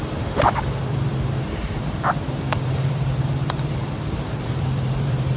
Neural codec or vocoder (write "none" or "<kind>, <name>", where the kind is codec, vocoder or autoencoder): vocoder, BigVGAN v2